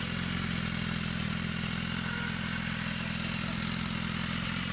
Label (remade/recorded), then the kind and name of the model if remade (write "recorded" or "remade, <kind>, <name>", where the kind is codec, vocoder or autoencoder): recorded